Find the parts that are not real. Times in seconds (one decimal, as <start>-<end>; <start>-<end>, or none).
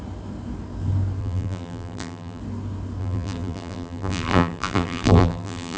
1.2-2.4; 3.0-5.8